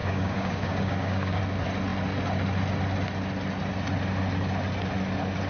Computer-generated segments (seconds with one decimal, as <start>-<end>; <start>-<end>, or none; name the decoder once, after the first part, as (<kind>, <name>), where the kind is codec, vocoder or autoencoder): 0.0-1.4 (codec, DAC)